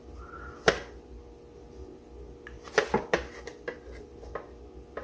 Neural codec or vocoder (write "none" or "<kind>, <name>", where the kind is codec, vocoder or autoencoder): none